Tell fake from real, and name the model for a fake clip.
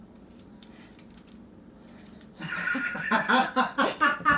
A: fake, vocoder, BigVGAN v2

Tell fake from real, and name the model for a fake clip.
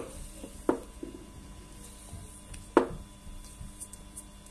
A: real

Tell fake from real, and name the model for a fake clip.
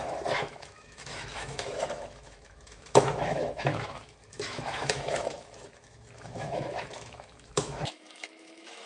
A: fake, autoencoder, DAC-VAE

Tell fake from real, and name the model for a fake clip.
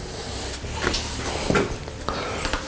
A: real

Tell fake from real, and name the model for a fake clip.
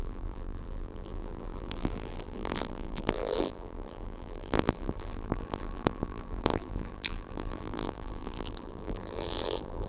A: fake, vocoder, BigVGAN v2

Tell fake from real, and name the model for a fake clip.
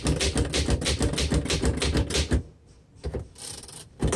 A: real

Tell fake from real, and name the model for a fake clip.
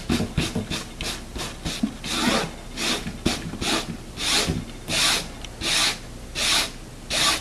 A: real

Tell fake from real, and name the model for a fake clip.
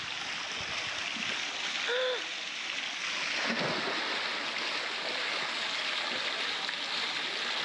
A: real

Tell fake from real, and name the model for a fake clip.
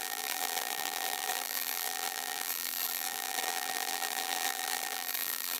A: fake, vocoder, BigVGAN v2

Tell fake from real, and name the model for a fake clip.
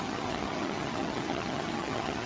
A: fake, vocoder, HiFi-GAN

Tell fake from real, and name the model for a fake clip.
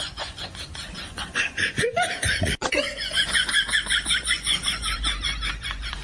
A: fake, vocoder, Vocos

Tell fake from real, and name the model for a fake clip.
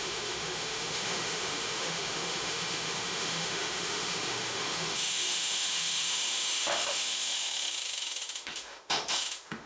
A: fake, autoencoder, DAC-VAE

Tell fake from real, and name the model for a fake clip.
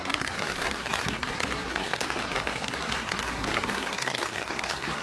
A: fake, codec, SNAC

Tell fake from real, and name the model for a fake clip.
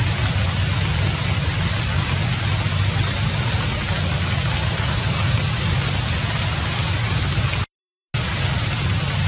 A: real